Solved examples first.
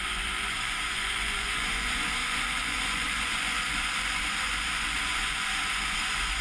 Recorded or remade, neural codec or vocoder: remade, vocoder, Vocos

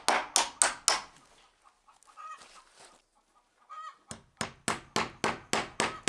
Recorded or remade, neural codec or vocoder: recorded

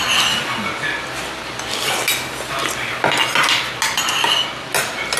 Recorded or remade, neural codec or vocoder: recorded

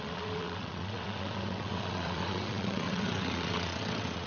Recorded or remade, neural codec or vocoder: remade, vocoder, WaveNeXt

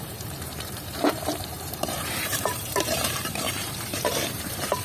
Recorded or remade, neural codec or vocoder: remade, vocoder, BigVGAN v2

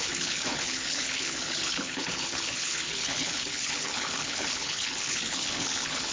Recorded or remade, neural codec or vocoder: remade, codec, HILCodec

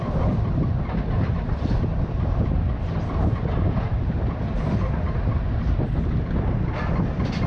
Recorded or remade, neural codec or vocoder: recorded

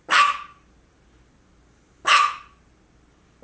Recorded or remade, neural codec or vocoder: recorded